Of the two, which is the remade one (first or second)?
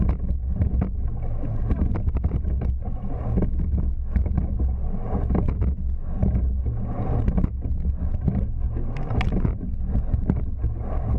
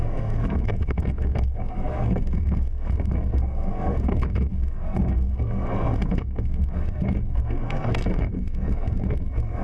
second